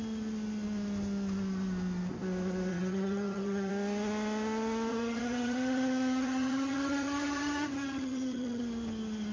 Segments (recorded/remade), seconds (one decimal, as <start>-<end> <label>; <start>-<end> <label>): 0.0-2.7 recorded; 2.7-3.7 remade; 3.7-4.9 recorded; 4.9-8.6 remade; 8.6-9.3 recorded

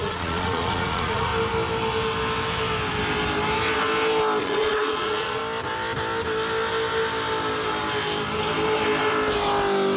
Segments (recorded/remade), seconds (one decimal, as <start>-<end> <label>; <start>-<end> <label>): 0.0-1.3 remade; 1.3-4.4 recorded; 4.4-5.4 remade; 5.4-10.0 recorded

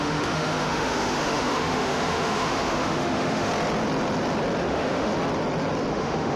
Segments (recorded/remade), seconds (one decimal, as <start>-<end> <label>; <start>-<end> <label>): 0.0-3.5 remade; 3.5-4.6 recorded; 4.6-5.1 remade; 5.1-5.9 recorded; 5.9-6.4 remade

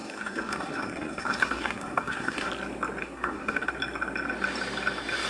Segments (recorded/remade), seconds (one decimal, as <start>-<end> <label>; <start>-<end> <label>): 0.0-2.5 remade; 2.5-3.0 recorded; 3.0-3.7 remade; 3.7-5.3 recorded

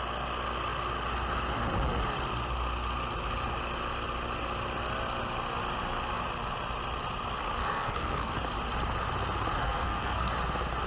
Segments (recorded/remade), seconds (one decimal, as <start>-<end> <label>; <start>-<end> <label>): 0.0-7.6 recorded; 7.6-8.3 remade; 8.3-9.6 recorded; 9.6-10.3 remade; 10.3-10.9 recorded

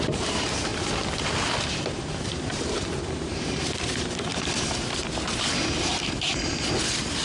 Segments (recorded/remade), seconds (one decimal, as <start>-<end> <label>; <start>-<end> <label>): 0.0-0.7 remade; 0.7-1.6 recorded; 1.6-7.2 remade